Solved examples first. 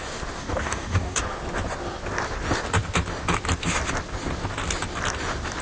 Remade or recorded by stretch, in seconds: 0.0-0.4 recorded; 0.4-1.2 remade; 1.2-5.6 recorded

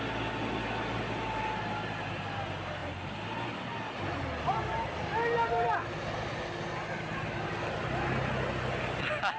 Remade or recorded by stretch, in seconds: 0.0-9.4 recorded

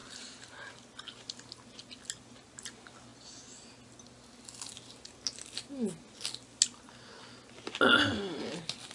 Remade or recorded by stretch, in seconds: 0.0-8.9 recorded

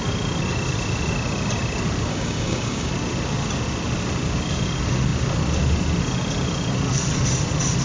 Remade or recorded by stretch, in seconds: 0.0-2.1 recorded; 2.1-2.9 remade; 2.9-7.8 recorded

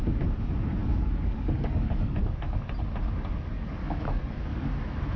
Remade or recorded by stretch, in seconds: 0.0-0.8 recorded; 0.8-2.7 remade; 2.7-3.5 recorded; 3.5-4.7 remade; 4.7-5.2 recorded

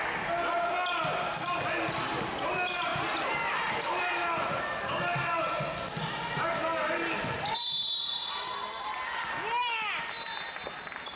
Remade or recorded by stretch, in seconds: 0.0-11.1 recorded